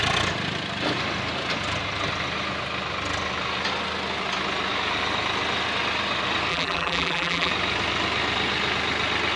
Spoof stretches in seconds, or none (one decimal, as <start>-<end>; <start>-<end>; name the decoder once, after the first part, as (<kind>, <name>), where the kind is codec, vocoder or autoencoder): 6.5-7.5 (vocoder, BigVGAN v2)